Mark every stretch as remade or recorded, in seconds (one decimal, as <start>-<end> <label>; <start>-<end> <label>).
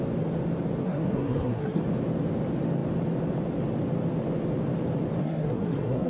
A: 0.0-0.8 recorded; 0.8-1.8 remade; 1.8-5.2 recorded; 5.2-6.1 remade